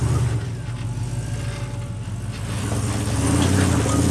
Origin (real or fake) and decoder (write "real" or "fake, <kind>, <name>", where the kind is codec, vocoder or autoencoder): real